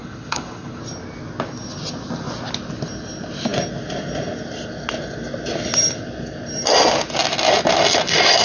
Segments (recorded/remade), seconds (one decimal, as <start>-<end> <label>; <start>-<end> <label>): 0.0-0.8 remade; 0.8-8.4 recorded